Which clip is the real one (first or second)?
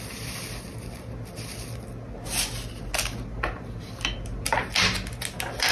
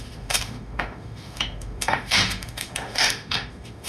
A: first